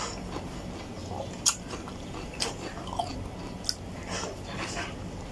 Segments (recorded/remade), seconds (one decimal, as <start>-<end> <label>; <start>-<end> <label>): 0.0-1.0 recorded; 1.0-2.5 remade; 2.5-5.3 recorded